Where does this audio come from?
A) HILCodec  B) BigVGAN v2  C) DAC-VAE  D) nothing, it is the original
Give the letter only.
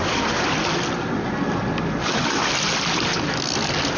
D